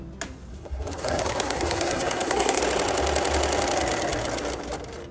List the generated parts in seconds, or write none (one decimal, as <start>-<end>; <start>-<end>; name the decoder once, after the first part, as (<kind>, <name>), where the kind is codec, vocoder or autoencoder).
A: 0.5-2.6 (codec, SNAC)